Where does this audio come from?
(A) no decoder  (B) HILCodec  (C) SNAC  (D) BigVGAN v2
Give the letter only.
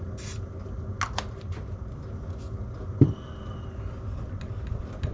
A